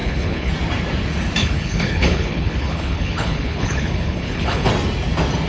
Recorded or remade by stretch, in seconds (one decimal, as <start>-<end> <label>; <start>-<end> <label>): 0.0-0.5 remade; 0.5-1.4 recorded; 1.4-4.7 remade; 4.7-5.5 recorded